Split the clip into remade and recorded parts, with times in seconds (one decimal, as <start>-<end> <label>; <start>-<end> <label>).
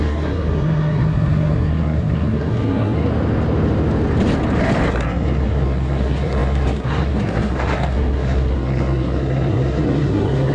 0.0-3.1 remade; 3.1-4.9 recorded; 4.9-10.5 remade